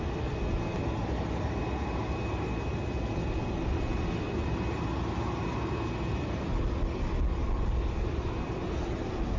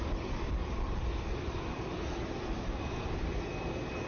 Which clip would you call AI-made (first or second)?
second